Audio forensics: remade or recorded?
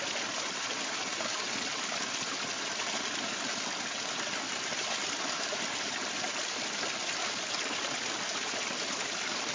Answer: recorded